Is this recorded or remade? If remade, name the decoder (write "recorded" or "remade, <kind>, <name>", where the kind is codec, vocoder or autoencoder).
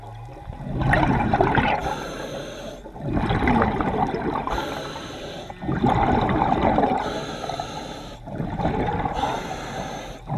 recorded